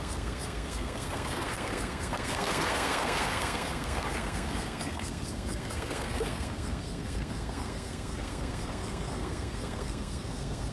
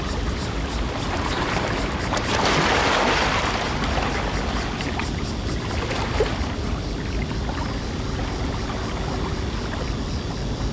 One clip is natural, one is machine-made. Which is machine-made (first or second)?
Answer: first